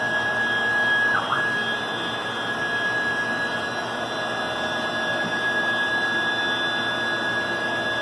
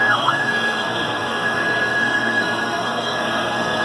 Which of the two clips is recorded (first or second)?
first